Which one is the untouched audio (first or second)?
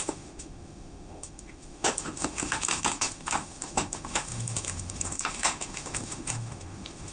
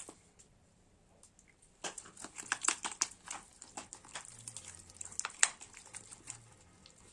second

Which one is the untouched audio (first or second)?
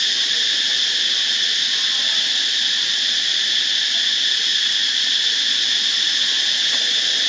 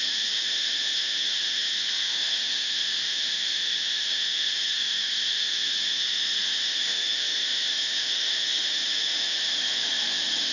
first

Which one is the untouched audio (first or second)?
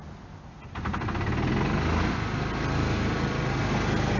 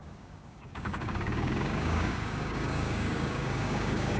first